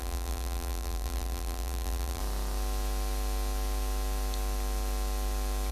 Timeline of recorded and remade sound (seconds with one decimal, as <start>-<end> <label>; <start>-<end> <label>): 0.0-2.2 remade; 2.2-5.7 recorded